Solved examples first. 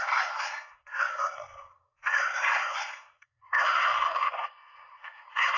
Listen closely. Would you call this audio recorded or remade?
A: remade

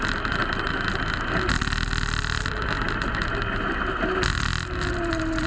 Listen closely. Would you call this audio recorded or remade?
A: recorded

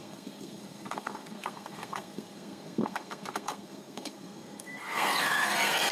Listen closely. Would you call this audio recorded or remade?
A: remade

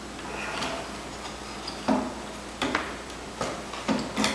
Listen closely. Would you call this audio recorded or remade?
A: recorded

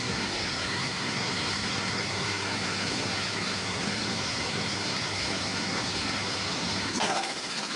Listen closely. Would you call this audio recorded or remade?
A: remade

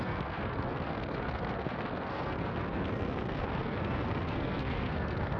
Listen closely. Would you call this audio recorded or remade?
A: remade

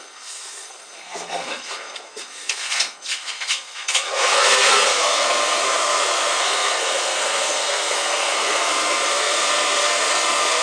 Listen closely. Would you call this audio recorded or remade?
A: remade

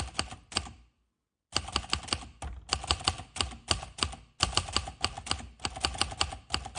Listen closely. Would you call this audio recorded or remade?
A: recorded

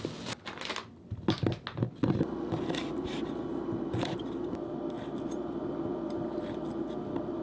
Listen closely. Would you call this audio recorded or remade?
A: recorded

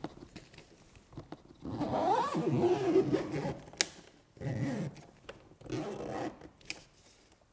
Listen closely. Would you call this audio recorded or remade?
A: recorded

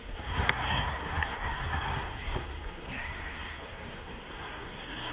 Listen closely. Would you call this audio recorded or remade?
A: remade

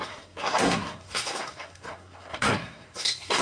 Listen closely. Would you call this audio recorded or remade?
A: remade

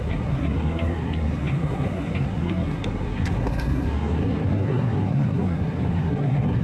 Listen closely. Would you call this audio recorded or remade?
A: remade